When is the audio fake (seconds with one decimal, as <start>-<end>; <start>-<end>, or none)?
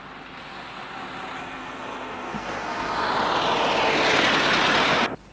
1.4-3.1